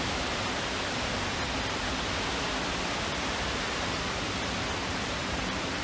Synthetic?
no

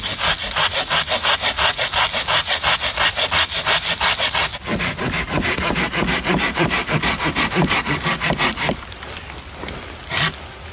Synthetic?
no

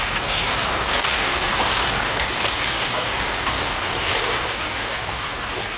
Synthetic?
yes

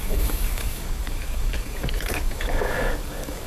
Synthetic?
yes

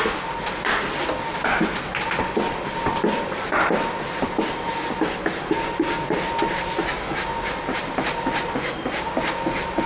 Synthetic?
no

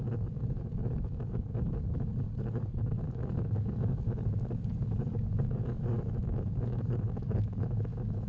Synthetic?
yes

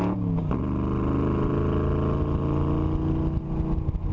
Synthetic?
no